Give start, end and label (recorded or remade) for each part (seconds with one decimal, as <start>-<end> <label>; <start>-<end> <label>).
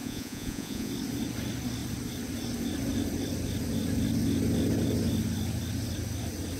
0.0-0.9 remade; 0.9-6.6 recorded